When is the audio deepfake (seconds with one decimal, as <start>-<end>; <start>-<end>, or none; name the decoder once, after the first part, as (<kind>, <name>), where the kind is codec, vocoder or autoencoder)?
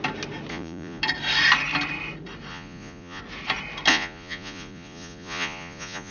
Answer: 0.5-1.0 (vocoder, Vocos); 2.5-3.2; 3.9-6.1